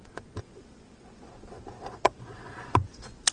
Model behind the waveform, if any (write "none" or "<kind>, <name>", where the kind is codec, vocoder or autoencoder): vocoder, Vocos